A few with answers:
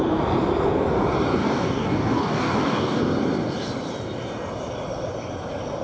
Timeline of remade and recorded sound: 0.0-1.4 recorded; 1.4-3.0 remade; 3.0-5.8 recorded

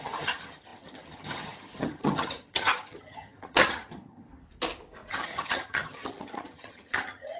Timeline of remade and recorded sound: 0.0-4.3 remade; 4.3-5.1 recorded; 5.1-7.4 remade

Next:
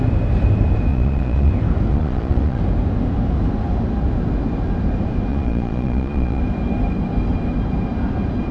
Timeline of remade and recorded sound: 0.0-0.9 recorded; 0.9-1.5 remade; 1.5-1.9 recorded; 1.9-2.6 remade; 2.6-5.3 recorded; 5.3-6.4 remade; 6.4-8.5 recorded